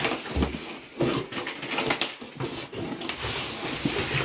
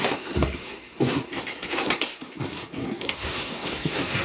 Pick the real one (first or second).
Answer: first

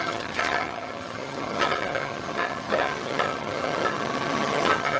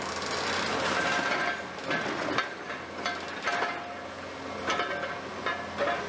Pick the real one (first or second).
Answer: second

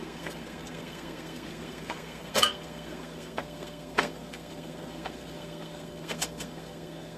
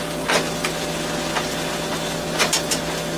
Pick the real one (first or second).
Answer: second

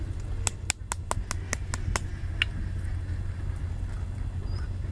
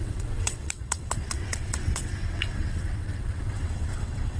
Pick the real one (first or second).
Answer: first